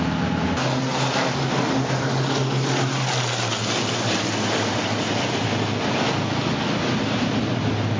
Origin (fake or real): real